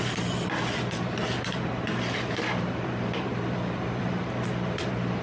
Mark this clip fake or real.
fake